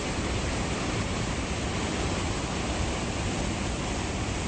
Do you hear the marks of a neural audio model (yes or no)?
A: no